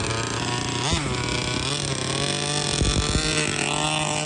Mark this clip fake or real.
real